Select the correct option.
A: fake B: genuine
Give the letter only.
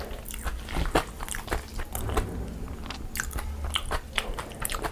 B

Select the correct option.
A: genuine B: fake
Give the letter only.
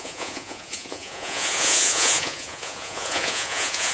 B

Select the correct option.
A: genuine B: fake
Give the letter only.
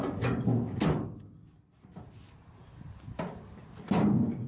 A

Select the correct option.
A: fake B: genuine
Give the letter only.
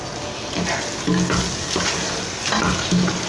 B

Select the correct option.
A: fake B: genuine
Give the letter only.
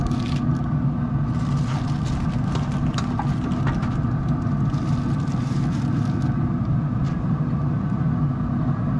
B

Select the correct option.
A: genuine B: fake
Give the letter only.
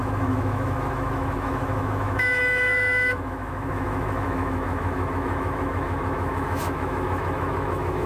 B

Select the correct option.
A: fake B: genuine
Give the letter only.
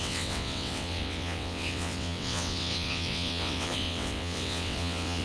A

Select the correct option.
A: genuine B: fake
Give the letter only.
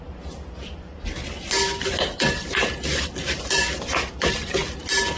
A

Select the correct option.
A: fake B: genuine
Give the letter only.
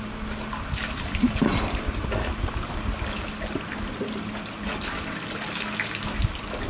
B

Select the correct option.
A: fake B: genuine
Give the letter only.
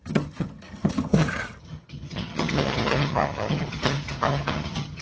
A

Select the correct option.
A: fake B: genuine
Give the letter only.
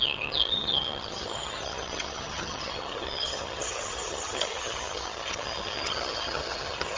A